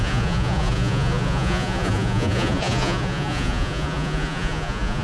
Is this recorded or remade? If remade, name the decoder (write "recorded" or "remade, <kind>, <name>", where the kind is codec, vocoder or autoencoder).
remade, vocoder, Vocos